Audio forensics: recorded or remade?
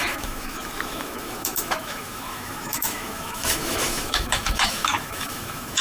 remade